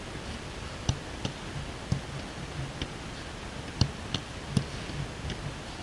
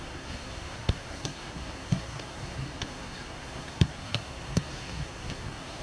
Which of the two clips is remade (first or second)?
second